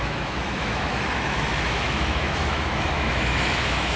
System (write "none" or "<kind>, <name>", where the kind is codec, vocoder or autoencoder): autoencoder, DAC-VAE